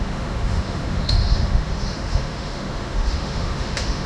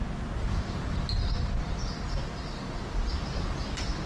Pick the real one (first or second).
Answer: second